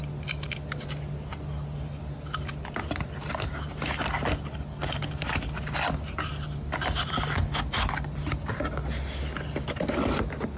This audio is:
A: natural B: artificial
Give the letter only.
A